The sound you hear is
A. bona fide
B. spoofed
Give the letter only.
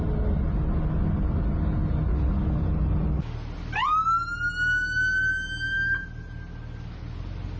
A